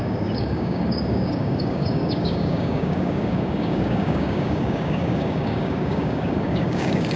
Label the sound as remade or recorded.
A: remade